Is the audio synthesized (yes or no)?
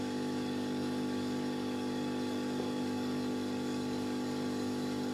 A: yes